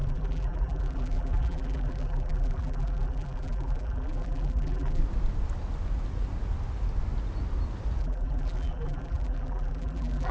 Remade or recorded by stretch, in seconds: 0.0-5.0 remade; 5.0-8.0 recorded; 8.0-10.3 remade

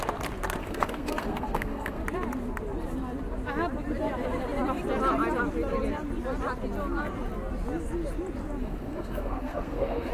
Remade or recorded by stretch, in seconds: 0.0-0.6 recorded; 0.6-2.0 remade; 2.0-8.6 recorded; 8.6-10.1 remade

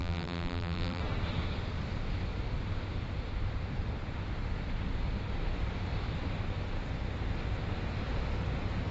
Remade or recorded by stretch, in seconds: 0.0-1.0 remade; 1.0-8.9 recorded

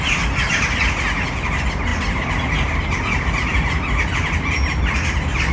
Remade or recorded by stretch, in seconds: 0.0-5.5 recorded